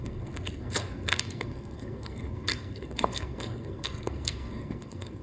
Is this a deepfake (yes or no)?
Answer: yes